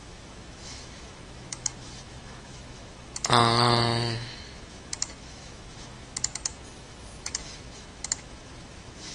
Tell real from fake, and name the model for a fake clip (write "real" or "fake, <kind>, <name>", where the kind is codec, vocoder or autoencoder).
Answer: fake, autoencoder, DAC-VAE